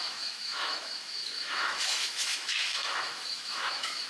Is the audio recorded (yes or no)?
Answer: no